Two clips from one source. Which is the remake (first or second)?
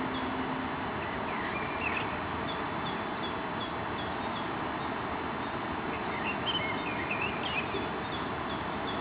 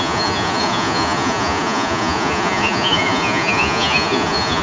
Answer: second